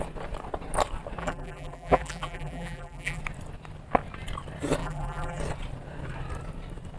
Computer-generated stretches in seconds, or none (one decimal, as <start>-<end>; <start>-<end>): 1.2-3.2; 4.8-5.4